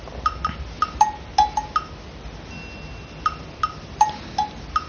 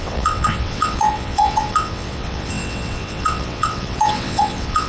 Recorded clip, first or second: first